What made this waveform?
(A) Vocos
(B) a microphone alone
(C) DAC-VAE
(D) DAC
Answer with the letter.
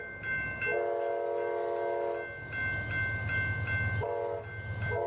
B